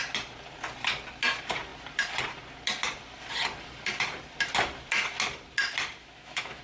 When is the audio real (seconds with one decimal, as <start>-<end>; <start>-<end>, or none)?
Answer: 0.0-6.0